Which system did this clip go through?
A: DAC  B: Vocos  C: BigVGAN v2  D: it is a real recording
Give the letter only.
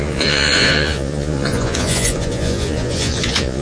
B